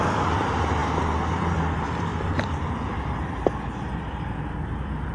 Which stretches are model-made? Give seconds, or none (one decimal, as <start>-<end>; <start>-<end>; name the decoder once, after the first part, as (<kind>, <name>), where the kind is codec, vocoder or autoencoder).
0.0-5.1 (vocoder, BigVGAN v2)